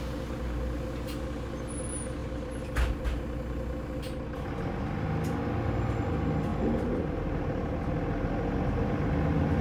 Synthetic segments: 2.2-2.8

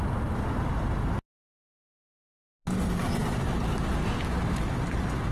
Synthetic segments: none

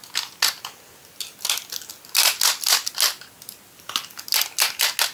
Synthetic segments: none